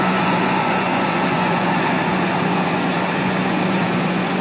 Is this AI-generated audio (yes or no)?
yes